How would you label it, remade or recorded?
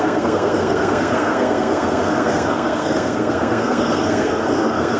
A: remade